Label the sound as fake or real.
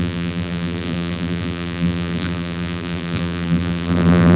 fake